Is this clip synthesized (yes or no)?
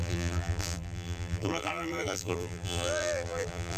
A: yes